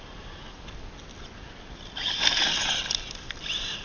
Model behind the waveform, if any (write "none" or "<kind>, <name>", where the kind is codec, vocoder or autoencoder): none